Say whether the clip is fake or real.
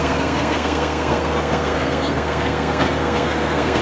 fake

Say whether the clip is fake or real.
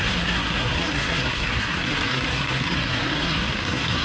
fake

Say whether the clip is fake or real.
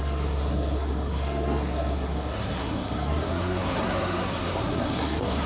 fake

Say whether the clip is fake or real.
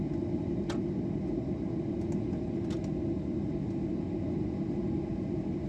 real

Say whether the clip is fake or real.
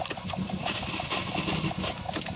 real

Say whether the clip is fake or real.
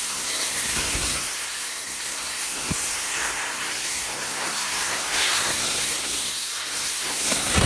fake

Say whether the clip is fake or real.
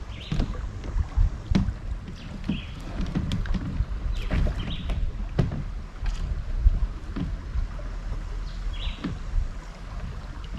real